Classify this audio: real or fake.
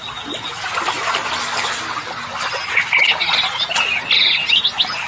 real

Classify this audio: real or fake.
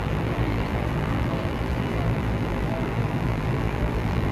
fake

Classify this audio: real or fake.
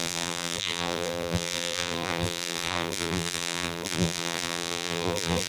fake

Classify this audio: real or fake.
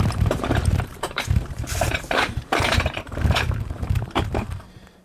fake